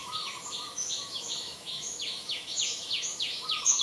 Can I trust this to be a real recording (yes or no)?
no